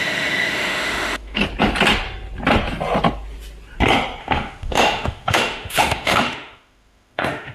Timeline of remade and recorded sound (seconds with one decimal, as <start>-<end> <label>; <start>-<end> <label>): 0.0-1.4 remade; 1.4-4.2 recorded; 4.2-7.5 remade

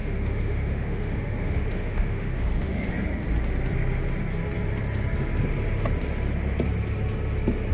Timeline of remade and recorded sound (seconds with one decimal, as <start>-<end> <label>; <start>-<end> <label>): 0.0-2.9 remade; 2.9-7.7 recorded

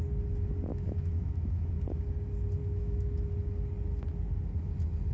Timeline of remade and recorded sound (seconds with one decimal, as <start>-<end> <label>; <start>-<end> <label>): 0.0-0.7 recorded; 0.7-1.7 remade; 1.7-2.6 recorded; 2.6-3.3 remade; 3.3-5.1 recorded

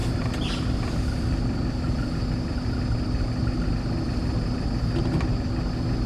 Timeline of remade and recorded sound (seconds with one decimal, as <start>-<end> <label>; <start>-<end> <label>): 0.0-6.1 recorded

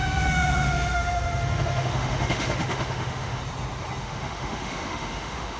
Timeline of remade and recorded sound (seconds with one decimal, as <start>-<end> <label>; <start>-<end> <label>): 0.0-3.4 remade; 3.4-4.0 recorded; 4.0-5.6 remade

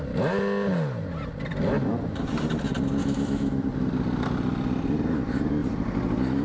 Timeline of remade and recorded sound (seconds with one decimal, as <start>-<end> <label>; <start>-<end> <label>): 0.0-3.0 recorded; 3.0-3.7 remade; 3.7-6.4 recorded

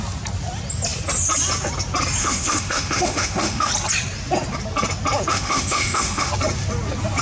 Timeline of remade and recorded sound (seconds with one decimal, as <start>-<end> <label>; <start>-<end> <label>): 0.0-2.2 recorded; 2.2-3.7 remade; 3.7-5.3 recorded; 5.3-6.3 remade; 6.3-7.2 recorded

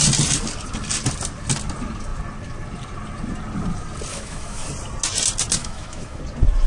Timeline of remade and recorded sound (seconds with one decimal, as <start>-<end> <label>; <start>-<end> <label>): 0.0-4.1 recorded; 4.1-4.7 remade; 4.7-5.6 recorded; 5.6-6.2 remade; 6.2-6.7 recorded